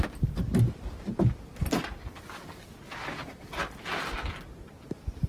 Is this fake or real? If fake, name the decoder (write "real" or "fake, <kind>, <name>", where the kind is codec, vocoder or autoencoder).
real